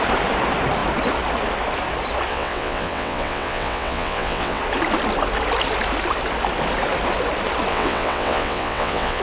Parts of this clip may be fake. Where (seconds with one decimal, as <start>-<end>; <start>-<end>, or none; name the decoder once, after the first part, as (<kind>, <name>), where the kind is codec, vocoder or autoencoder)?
2.3-4.6 (vocoder, WaveNeXt); 7.7-9.2